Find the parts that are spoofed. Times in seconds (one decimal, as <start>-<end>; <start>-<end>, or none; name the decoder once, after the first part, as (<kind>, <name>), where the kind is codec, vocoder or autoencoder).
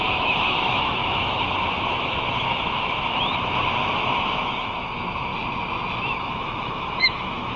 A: 0.0-5.3 (autoencoder, DAC-VAE); 6.1-7.6